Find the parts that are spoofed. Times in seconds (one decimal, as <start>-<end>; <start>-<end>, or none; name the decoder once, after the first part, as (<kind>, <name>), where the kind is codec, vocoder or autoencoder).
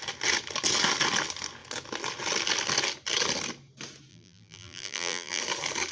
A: 4.1-5.4 (vocoder, BigVGAN v2)